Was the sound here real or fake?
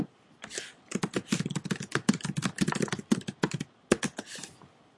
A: real